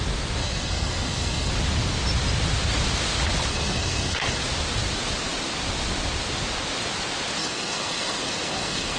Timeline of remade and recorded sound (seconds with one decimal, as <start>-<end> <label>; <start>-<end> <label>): 0.0-0.4 recorded; 0.4-1.5 remade; 1.5-3.5 recorded; 3.5-4.4 remade; 4.4-7.4 recorded; 7.4-9.0 remade